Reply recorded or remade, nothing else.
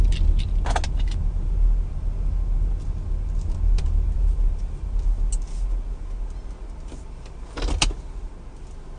recorded